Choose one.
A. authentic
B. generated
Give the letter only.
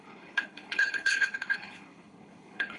B